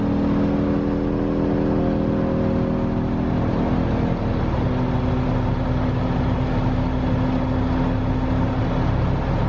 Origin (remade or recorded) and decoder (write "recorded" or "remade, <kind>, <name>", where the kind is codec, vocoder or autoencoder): recorded